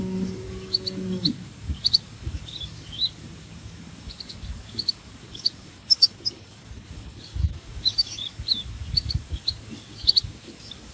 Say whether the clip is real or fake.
fake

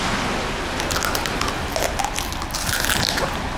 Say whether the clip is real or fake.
real